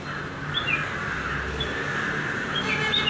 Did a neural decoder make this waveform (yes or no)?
no